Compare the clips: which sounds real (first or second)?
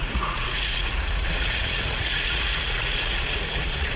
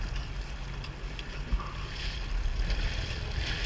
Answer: second